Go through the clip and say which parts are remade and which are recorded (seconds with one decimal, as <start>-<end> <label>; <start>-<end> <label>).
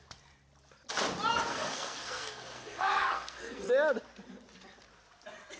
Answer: 0.0-1.5 recorded; 1.5-3.7 remade; 3.7-5.6 recorded